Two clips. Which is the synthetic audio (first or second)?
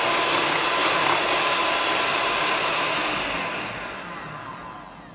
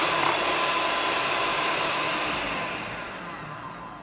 second